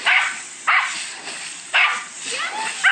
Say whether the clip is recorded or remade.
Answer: remade